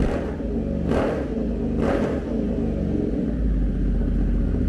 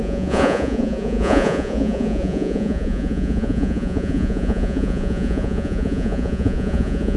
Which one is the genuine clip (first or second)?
first